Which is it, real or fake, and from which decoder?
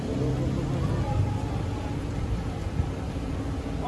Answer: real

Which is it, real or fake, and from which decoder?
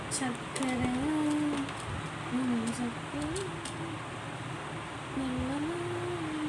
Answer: real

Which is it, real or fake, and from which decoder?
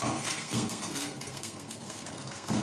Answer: fake, codec, SNAC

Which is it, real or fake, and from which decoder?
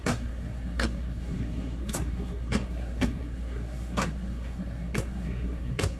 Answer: fake, codec, SNAC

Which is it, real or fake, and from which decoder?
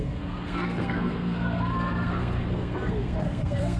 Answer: fake, codec, SNAC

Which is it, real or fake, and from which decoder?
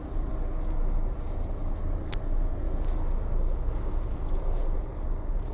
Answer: real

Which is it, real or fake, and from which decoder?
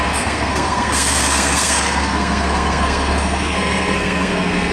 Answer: fake, codec, SNAC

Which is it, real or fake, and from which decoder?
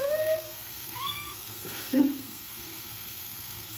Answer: fake, codec, SNAC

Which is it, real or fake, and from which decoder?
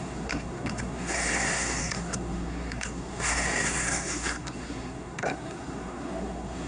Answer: fake, codec, SNAC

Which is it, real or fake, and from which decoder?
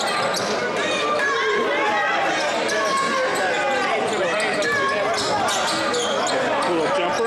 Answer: real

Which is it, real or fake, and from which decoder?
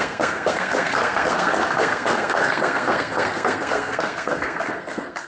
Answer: fake, codec, SNAC